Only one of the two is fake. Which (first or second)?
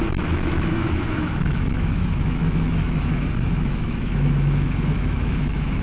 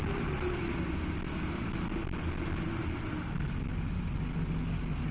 first